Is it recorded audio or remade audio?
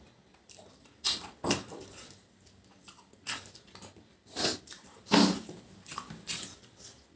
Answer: recorded